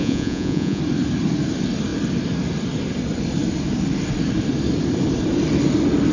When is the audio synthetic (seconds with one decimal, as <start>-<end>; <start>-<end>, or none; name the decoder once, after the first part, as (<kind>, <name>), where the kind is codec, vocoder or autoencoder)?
0.0-0.8 (vocoder, Vocos)

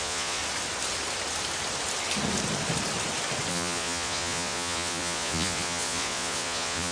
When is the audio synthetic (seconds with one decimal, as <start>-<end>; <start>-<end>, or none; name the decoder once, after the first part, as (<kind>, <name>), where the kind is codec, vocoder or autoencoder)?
0.0-0.4 (vocoder, Vocos); 3.5-6.9